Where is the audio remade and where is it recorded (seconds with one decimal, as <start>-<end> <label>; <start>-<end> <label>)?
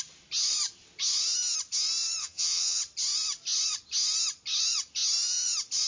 0.0-2.2 recorded; 2.2-2.8 remade; 2.8-5.9 recorded